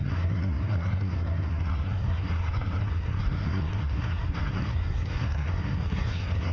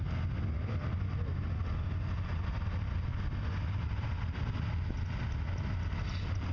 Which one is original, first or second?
second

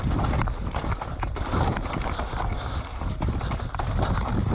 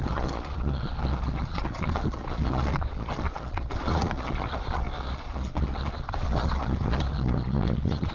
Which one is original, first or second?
first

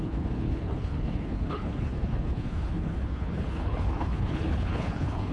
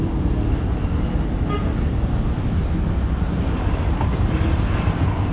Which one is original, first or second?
second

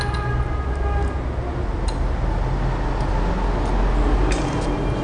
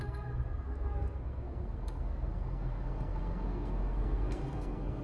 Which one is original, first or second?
first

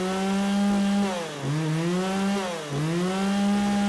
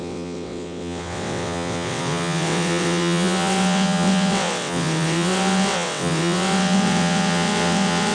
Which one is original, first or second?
first